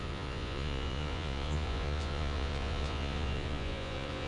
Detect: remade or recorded remade